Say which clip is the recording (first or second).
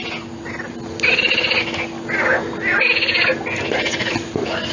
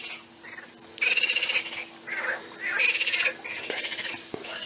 first